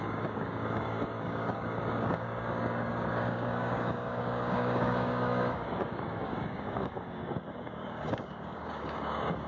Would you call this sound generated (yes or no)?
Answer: yes